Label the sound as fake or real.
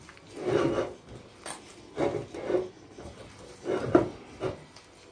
real